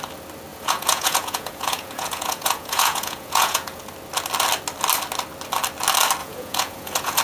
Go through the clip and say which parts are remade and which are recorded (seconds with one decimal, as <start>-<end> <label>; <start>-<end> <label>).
0.0-0.5 recorded; 0.5-3.8 remade; 3.8-6.2 recorded; 6.2-7.2 remade